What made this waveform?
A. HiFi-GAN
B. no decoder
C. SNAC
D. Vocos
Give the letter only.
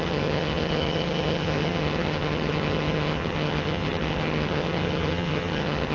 A